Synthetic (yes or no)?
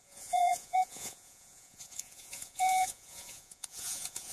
yes